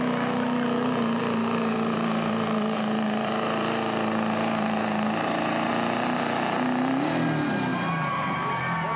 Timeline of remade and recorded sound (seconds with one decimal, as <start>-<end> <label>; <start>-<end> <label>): 0.0-1.2 recorded; 1.2-5.7 remade; 5.7-7.7 recorded; 7.7-8.6 remade; 8.6-9.0 recorded